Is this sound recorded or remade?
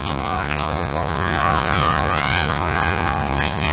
remade